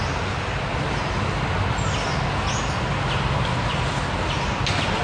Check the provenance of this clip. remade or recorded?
recorded